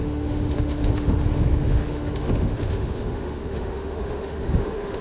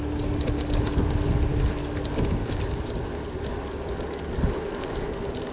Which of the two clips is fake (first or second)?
first